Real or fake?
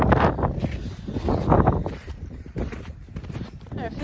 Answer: real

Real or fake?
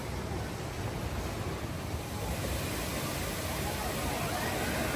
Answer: real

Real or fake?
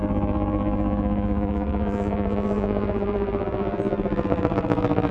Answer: fake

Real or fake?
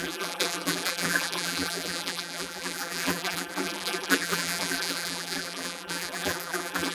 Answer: fake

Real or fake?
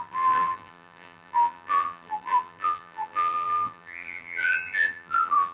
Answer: fake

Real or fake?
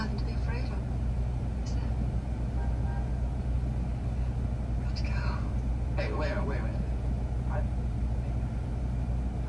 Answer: real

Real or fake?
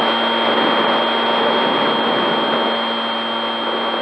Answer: real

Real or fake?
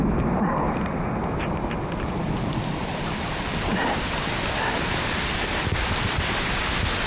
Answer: real